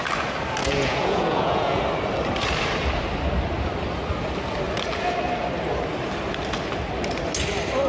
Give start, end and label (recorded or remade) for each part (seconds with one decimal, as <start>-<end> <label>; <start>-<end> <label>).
0.0-0.6 recorded; 0.6-1.8 remade; 1.8-7.9 recorded